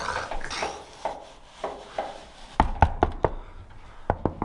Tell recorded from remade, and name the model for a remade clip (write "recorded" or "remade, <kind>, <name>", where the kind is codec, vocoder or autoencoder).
recorded